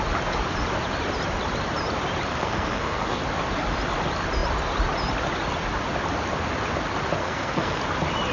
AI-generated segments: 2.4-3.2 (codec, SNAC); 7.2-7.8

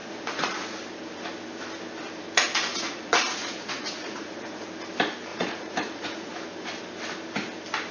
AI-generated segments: 0.0-0.8 (vocoder, Vocos); 2.7-4.7; 5.3-6.3

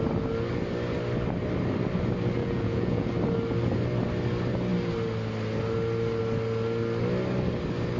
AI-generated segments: 2.4-3.1 (vocoder, Vocos)

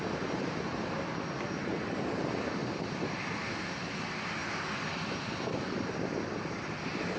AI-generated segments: 2.6-3.2 (vocoder, BigVGAN v2)